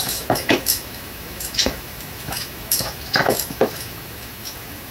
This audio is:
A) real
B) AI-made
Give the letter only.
B